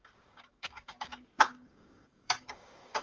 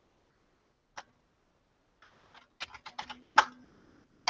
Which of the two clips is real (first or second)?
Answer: second